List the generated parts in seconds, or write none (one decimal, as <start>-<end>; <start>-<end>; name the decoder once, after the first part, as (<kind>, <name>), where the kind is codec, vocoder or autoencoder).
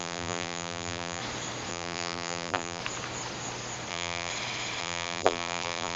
0.0-1.2 (vocoder, BigVGAN v2); 1.7-2.8; 3.9-4.3; 4.8-6.0